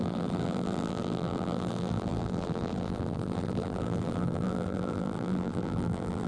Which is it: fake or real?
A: fake